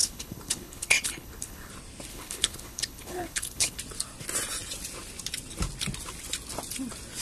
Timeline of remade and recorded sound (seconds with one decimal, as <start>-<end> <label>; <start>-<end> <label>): 0.0-1.7 remade; 1.7-2.1 recorded; 2.1-3.8 remade; 3.8-7.2 recorded